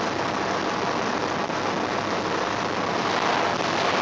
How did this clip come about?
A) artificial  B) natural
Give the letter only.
B